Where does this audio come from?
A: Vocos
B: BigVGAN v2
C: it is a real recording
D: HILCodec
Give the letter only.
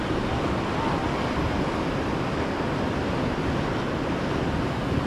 C